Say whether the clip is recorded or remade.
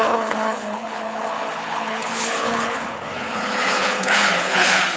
remade